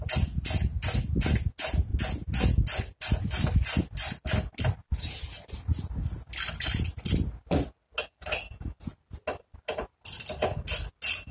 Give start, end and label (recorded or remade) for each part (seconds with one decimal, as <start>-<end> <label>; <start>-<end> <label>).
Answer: 0.0-11.3 recorded